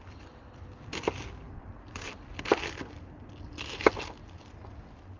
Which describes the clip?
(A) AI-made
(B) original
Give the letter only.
B